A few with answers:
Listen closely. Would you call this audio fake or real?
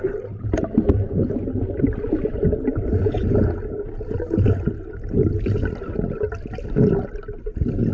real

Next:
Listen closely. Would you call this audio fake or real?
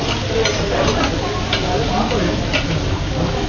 real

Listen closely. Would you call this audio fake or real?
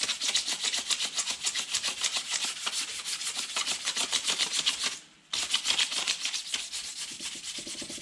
real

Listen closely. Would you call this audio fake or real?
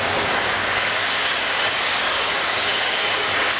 fake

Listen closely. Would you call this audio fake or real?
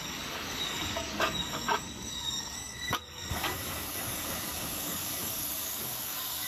fake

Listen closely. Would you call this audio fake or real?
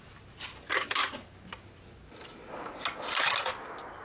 real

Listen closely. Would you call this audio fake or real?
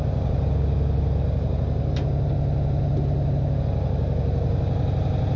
real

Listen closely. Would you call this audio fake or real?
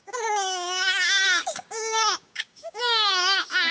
fake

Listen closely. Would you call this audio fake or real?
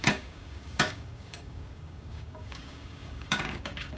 fake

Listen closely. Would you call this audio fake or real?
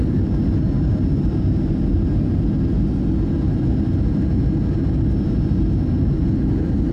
real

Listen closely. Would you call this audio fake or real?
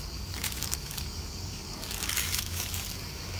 fake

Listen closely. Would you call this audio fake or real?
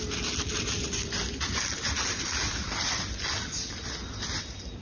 real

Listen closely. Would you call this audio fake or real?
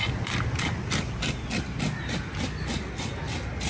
real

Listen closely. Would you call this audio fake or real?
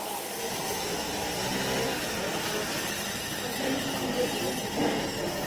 real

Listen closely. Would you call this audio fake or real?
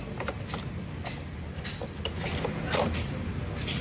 real